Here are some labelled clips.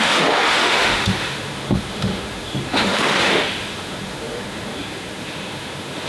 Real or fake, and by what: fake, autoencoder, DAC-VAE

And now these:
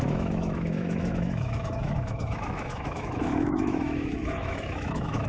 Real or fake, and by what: fake, autoencoder, DAC-VAE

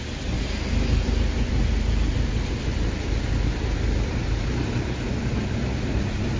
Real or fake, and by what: real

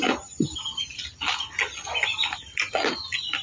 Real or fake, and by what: real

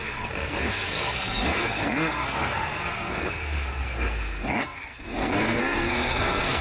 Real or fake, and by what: fake, codec, SNAC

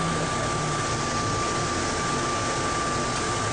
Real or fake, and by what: real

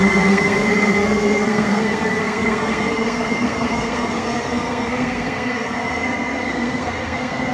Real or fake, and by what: fake, codec, SNAC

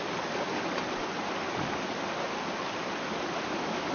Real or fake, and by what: real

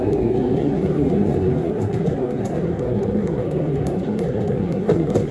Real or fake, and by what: fake, codec, SNAC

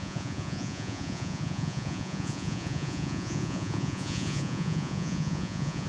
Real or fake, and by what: fake, vocoder, Vocos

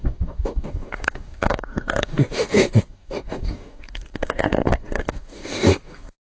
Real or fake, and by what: fake, codec, DAC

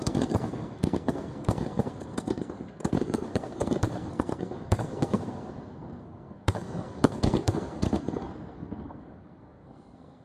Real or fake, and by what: fake, codec, SNAC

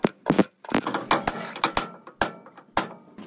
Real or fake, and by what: real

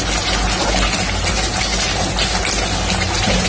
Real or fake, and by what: real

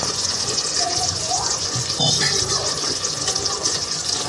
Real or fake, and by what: fake, vocoder, Vocos